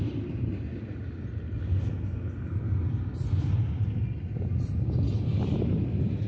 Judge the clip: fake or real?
real